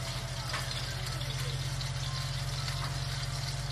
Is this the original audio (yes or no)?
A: yes